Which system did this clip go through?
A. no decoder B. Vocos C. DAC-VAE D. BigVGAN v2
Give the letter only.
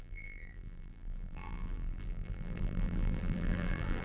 D